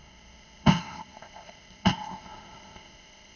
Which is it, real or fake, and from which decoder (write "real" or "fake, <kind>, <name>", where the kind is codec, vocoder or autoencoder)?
fake, codec, ZipCodec